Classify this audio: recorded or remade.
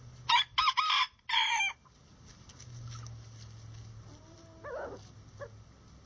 recorded